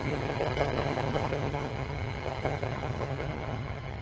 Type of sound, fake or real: fake